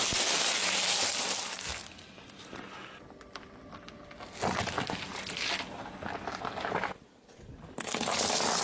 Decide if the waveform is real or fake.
real